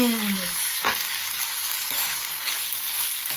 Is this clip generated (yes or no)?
yes